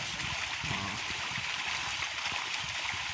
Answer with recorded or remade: recorded